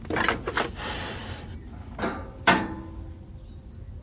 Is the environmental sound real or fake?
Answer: real